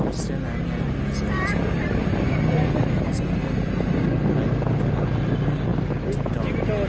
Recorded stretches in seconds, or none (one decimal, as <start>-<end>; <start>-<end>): 0.0-6.9